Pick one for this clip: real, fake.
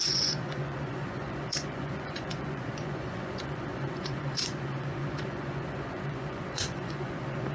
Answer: fake